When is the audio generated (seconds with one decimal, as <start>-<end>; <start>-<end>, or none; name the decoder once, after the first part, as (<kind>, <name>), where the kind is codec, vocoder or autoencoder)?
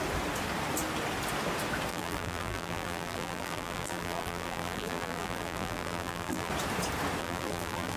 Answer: 1.9-6.5 (vocoder, BigVGAN v2); 7.2-8.0